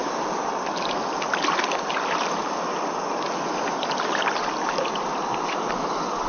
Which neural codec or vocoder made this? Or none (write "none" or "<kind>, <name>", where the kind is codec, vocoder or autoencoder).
none